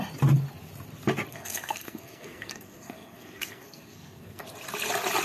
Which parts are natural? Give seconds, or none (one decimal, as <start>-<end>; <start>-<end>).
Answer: 0.0-1.3; 4.4-5.2